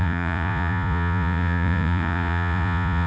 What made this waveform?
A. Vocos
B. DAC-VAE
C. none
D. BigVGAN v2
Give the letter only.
A